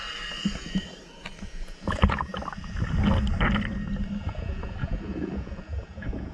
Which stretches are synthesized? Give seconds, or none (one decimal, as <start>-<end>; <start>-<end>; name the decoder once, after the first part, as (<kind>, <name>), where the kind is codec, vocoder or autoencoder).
1.4-2.3 (vocoder, Vocos); 4.2-6.3